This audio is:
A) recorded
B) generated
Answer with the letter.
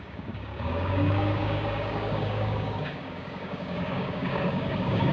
B